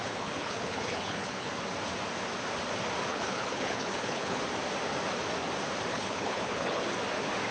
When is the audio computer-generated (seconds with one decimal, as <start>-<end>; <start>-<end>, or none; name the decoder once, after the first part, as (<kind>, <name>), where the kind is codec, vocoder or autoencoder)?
0.0-1.5 (codec, HILCodec); 3.1-4.4; 5.9-6.8